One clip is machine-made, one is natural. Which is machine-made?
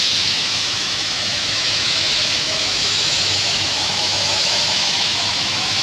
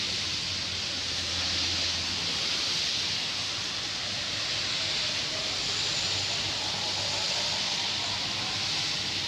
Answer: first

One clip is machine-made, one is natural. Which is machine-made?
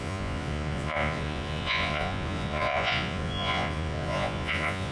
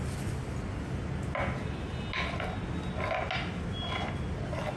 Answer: first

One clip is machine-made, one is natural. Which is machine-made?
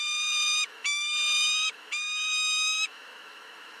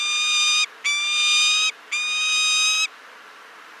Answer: first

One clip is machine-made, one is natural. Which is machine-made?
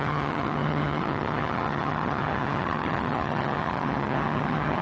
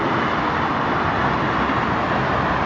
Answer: first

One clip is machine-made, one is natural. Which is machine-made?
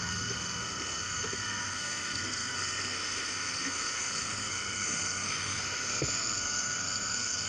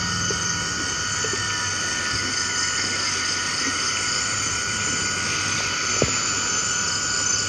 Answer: first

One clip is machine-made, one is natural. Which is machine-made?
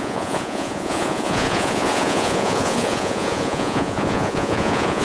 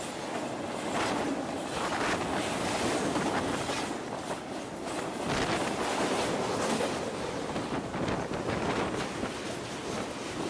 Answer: first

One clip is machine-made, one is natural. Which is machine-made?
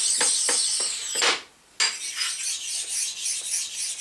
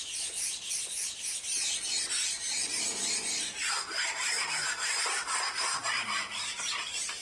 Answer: second